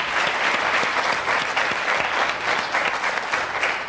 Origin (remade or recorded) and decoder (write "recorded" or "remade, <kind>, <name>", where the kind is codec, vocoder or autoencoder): recorded